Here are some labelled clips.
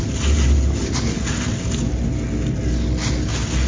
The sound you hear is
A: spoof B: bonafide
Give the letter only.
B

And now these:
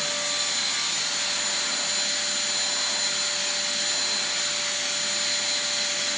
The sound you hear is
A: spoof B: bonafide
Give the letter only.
B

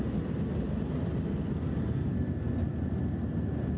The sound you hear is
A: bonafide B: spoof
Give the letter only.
A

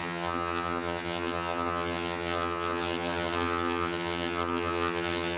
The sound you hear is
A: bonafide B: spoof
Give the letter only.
B